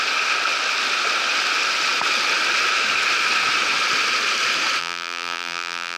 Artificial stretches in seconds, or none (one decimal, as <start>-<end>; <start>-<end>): 4.8-6.0